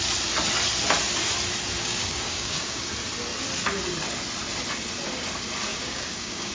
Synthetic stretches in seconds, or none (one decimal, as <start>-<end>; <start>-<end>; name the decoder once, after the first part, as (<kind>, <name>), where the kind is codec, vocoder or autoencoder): 1.8-2.9 (codec, DAC); 5.7-6.5

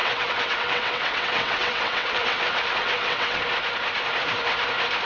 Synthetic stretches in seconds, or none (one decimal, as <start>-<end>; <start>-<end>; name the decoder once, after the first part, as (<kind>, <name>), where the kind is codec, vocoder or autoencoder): 0.0-2.4 (vocoder, WaveNeXt); 2.8-3.4

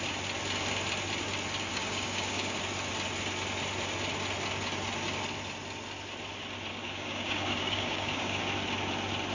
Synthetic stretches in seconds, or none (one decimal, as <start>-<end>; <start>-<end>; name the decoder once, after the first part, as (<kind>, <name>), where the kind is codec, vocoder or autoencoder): 1.7-2.6 (codec, DAC); 6.7-8.4

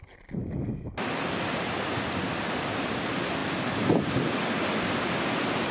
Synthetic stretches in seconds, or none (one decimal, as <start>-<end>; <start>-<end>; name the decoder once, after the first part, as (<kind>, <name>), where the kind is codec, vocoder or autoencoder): none

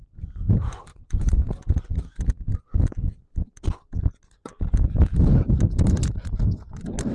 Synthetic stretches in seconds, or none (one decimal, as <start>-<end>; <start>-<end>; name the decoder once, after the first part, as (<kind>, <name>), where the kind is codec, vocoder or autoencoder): 0.9-1.6 (vocoder, Vocos)

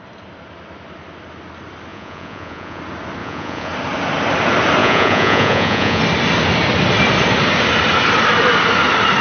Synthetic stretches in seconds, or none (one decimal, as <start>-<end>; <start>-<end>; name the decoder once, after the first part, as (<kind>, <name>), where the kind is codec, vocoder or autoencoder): 1.9-2.8 (vocoder, Vocos); 3.2-3.7; 4.8-6.0

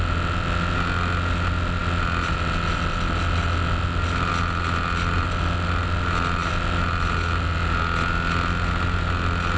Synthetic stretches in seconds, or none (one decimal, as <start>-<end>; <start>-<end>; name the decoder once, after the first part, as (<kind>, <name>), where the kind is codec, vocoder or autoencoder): none

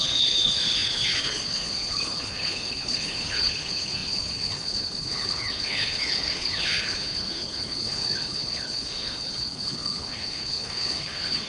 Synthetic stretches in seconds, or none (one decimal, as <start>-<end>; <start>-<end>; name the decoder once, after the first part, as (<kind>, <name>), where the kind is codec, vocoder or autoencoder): 0.0-11.5 (codec, HILCodec)